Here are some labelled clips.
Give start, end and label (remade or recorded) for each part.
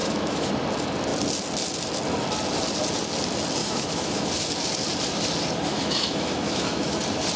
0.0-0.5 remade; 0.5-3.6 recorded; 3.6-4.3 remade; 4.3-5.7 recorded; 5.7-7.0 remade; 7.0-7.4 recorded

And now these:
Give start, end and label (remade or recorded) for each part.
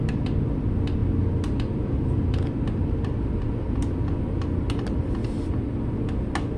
0.0-6.6 recorded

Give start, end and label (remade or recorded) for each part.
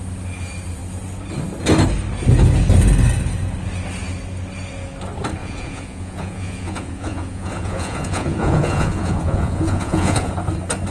0.0-5.4 recorded; 5.4-10.3 remade; 10.3-10.9 recorded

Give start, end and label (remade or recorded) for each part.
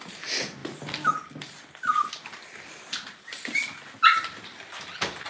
0.0-5.3 recorded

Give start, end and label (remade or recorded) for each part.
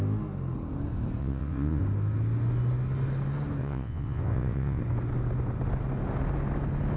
0.0-1.2 recorded; 1.2-1.8 remade; 1.8-3.6 recorded; 3.6-4.8 remade; 4.8-7.0 recorded